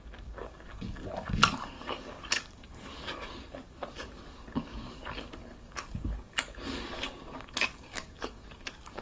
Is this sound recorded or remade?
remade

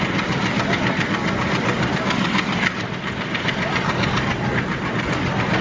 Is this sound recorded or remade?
recorded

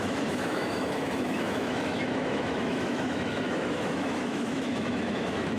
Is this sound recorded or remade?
remade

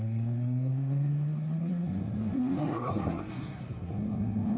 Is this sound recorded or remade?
remade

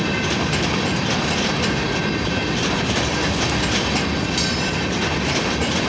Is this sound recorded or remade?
recorded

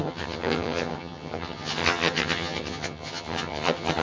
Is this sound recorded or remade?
remade